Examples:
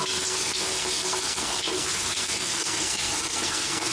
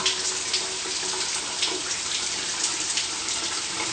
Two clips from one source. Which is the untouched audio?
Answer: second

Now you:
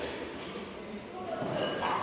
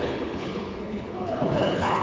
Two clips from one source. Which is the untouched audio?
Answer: first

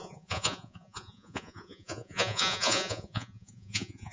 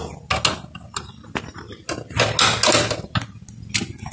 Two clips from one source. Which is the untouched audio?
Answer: second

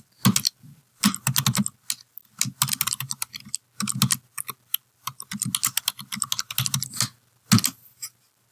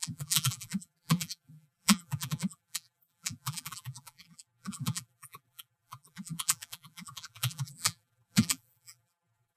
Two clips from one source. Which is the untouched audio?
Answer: first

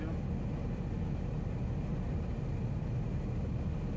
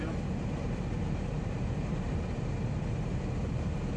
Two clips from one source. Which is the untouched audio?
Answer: first